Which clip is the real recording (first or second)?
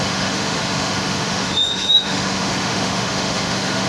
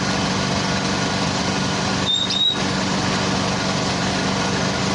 second